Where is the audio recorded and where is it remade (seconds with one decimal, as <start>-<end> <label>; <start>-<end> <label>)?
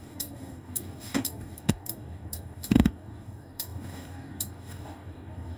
0.0-5.6 remade